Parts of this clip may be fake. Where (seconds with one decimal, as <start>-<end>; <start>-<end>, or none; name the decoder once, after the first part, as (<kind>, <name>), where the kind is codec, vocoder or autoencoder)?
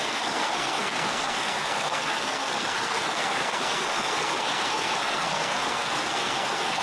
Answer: 0.0-6.8 (codec, SNAC)